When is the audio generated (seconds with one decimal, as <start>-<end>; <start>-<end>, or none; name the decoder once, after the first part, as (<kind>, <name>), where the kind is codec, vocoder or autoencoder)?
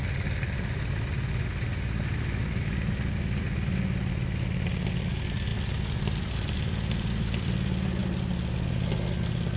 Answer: 2.4-3.1 (vocoder, BigVGAN v2); 5.5-7.5